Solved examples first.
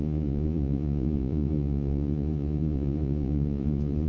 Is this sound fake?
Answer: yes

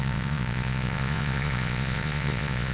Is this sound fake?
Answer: yes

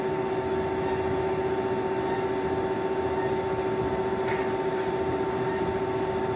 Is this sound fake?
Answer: no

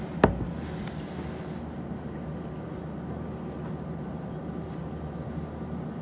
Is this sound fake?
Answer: no